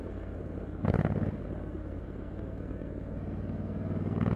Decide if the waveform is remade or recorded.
remade